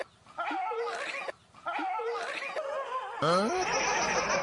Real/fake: real